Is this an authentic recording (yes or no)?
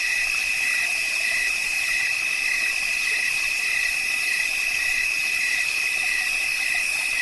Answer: no